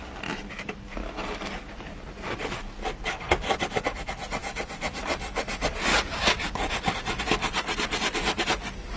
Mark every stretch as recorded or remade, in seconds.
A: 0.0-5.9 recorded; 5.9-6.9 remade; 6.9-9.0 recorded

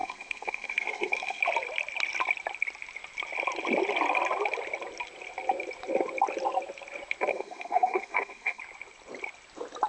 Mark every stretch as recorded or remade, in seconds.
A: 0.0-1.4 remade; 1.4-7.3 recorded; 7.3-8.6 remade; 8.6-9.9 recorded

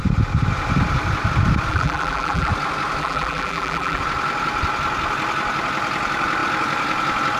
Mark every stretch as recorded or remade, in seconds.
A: 0.0-1.7 recorded; 1.7-2.5 remade; 2.5-3.0 recorded; 3.0-4.0 remade; 4.0-7.4 recorded

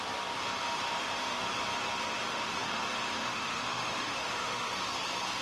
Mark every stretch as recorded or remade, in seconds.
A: 0.0-0.9 recorded; 0.9-1.4 remade; 1.4-2.3 recorded; 2.3-2.8 remade; 2.8-3.2 recorded; 3.2-4.7 remade; 4.7-5.4 recorded